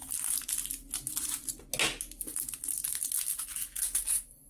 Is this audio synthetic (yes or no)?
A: no